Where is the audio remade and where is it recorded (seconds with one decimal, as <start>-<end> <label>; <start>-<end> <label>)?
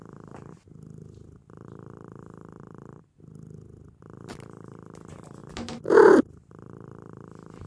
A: 0.0-7.7 recorded